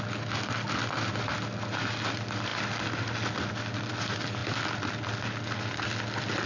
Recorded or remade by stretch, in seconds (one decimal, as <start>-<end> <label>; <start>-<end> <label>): 0.0-6.5 recorded